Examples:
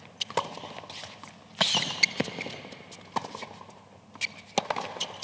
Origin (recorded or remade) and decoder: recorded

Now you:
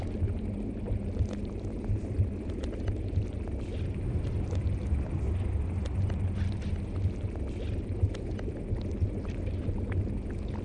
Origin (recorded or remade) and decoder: recorded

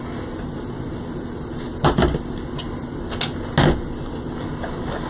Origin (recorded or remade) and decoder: recorded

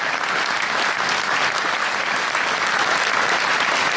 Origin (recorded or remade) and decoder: recorded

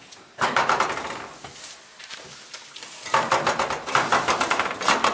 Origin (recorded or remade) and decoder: remade, vocoder, BigVGAN v2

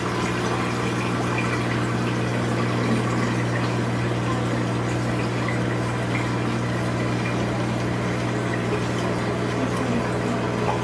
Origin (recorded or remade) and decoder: recorded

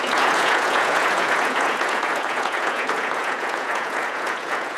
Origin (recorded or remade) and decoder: remade, vocoder, Vocos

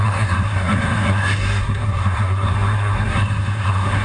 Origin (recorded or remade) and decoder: remade, codec, SNAC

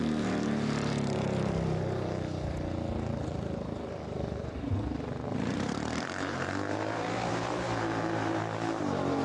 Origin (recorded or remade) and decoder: remade, vocoder, BigVGAN v2